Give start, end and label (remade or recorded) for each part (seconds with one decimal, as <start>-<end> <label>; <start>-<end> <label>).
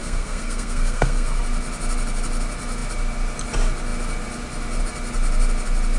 0.0-1.4 remade; 1.4-6.0 recorded